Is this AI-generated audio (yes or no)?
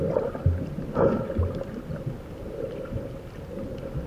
no